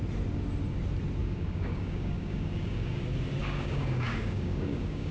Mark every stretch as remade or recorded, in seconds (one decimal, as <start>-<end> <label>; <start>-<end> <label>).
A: 0.0-1.2 recorded; 1.2-3.0 remade; 3.0-3.4 recorded; 3.4-5.1 remade